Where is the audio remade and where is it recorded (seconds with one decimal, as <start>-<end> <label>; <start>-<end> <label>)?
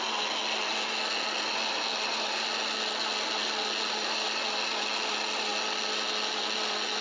0.0-7.0 recorded